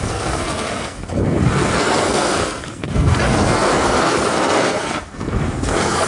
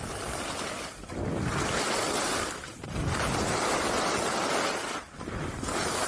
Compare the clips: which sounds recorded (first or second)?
second